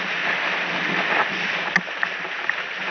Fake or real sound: real